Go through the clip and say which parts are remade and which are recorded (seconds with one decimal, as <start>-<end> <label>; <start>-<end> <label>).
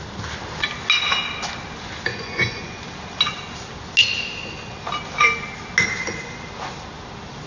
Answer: 0.0-2.1 recorded; 2.1-2.8 remade; 2.8-7.5 recorded